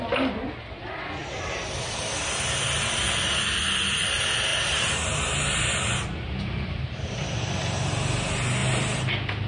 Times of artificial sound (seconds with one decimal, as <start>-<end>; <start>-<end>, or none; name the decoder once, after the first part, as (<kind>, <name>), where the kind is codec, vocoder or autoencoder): 1.2-2.1 (vocoder, BigVGAN v2); 4.5-7.9; 8.6-9.1